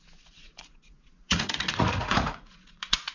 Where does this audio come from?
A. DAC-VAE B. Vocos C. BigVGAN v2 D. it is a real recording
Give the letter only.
B